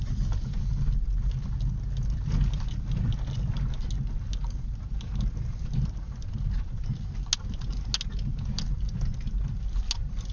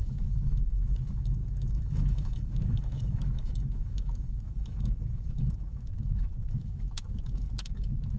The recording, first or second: first